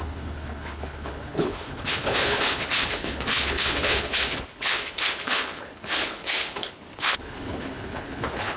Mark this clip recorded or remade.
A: remade